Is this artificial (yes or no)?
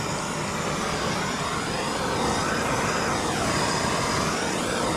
no